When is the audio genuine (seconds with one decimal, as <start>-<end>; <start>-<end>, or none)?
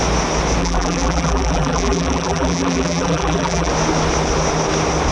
0.0-0.6; 3.7-5.1